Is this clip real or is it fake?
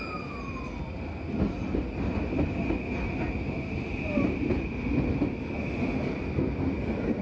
real